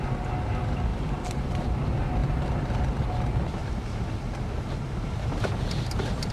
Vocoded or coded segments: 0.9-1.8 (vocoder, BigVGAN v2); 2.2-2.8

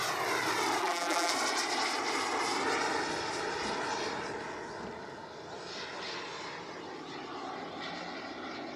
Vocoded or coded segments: 0.8-1.3 (vocoder, BigVGAN v2)

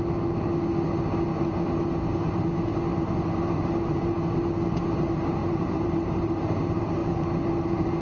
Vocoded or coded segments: 5.4-6.4 (vocoder, BigVGAN v2)